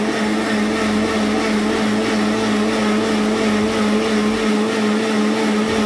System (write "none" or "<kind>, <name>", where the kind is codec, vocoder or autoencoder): none